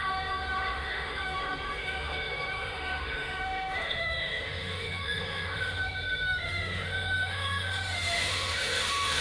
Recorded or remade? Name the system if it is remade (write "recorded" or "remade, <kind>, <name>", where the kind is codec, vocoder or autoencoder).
remade, autoencoder, DAC-VAE